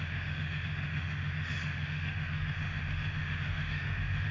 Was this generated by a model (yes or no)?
yes